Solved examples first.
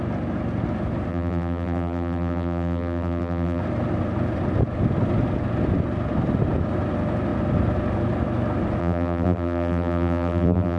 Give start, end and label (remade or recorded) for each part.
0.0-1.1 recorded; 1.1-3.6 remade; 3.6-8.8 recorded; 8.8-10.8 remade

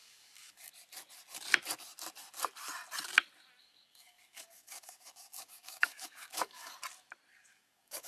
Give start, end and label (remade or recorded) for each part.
0.0-0.7 remade; 0.7-3.6 recorded; 3.6-6.7 remade; 6.7-7.3 recorded; 7.3-8.1 remade

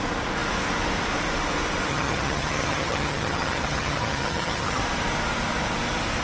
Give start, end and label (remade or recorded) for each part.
0.0-1.9 recorded; 1.9-4.8 remade; 4.8-6.2 recorded